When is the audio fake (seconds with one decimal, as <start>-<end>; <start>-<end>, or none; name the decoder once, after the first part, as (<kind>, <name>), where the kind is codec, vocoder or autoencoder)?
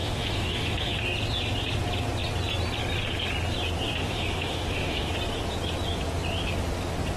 0.0-1.0 (autoencoder, DAC-VAE); 4.0-5.1